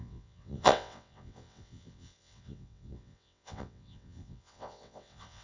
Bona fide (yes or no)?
no